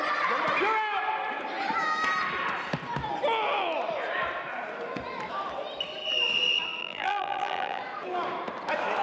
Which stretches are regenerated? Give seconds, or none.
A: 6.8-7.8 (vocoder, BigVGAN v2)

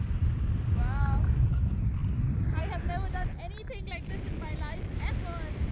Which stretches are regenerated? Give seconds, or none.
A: none